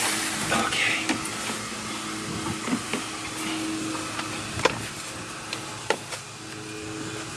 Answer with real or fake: real